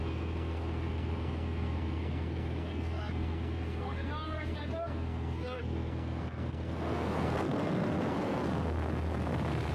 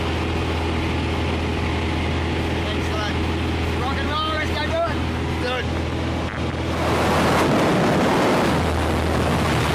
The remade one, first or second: first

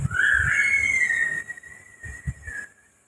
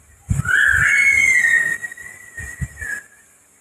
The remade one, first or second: first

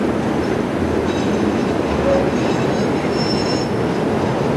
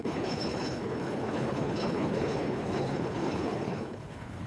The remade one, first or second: second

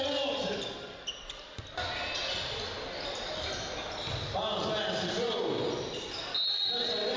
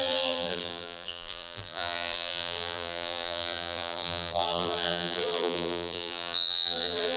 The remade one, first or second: second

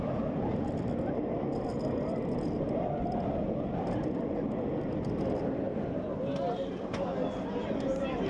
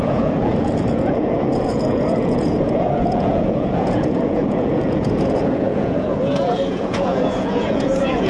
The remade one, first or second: second